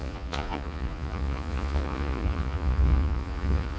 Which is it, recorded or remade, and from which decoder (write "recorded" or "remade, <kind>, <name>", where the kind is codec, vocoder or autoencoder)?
remade, vocoder, Vocos